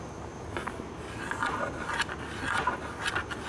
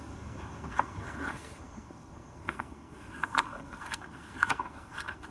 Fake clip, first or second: second